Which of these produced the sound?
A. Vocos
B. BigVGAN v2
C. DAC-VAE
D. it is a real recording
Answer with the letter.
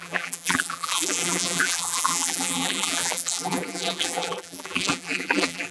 B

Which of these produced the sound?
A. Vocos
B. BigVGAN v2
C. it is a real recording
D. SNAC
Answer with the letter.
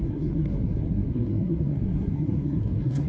D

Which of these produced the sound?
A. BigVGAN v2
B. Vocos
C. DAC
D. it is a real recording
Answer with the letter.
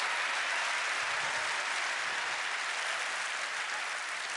D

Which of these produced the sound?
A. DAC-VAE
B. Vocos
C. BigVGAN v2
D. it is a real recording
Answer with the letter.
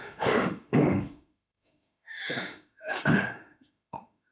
A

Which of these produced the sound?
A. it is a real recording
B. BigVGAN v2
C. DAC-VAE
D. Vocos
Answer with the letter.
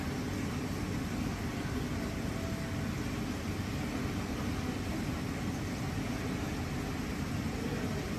A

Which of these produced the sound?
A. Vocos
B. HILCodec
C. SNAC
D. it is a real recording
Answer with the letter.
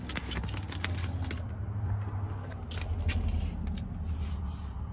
D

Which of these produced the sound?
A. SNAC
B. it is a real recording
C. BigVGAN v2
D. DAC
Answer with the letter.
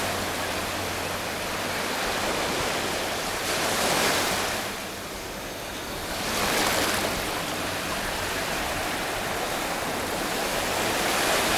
B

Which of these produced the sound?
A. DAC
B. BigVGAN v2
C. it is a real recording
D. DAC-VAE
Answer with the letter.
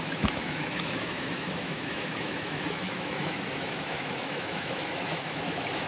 D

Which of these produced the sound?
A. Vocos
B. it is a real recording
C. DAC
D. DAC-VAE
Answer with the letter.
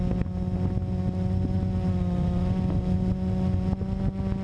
B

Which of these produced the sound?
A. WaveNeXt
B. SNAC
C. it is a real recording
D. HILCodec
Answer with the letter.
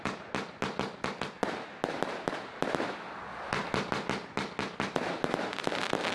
C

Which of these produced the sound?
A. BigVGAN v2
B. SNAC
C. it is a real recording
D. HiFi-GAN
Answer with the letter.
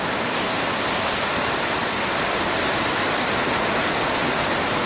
C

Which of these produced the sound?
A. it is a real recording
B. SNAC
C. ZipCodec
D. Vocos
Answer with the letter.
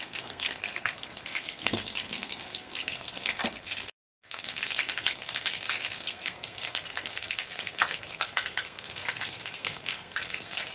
B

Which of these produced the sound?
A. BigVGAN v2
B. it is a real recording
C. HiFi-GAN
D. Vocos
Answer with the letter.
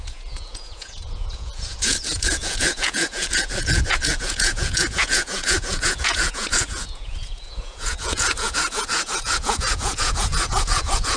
D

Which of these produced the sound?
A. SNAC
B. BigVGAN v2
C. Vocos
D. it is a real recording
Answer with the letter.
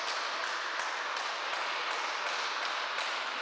D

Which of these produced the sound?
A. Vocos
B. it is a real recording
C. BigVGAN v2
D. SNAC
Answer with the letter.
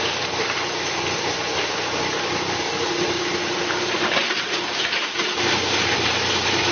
C